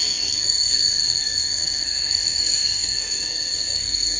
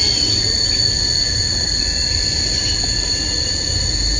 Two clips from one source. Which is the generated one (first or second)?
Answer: first